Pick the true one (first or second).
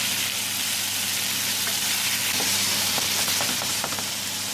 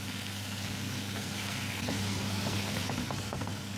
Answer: first